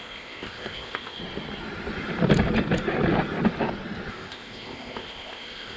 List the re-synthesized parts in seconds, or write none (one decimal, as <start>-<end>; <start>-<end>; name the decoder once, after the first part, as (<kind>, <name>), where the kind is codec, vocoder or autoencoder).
0.0-1.2 (codec, ZipCodec); 4.1-5.8